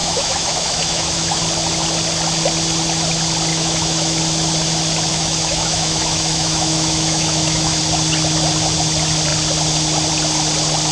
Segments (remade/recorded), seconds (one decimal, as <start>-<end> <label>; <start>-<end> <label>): 0.0-1.4 remade; 1.4-3.5 recorded; 3.5-4.2 remade; 4.2-5.1 recorded; 5.1-7.8 remade; 7.8-10.9 recorded